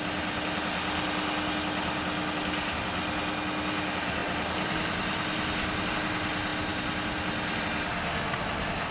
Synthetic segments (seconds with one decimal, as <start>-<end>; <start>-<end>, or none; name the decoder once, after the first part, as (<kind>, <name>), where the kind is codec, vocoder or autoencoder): none